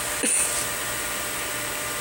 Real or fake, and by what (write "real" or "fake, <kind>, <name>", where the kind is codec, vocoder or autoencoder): real